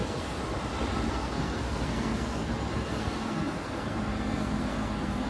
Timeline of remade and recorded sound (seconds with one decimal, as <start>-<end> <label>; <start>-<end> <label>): 0.0-0.4 remade; 0.4-1.1 recorded; 1.1-5.3 remade